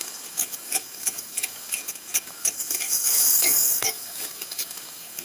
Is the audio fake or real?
fake